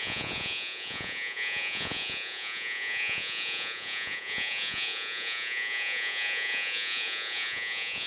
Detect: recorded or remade remade